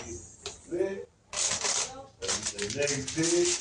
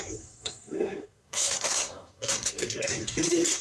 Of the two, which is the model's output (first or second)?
second